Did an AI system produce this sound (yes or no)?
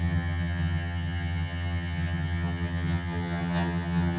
yes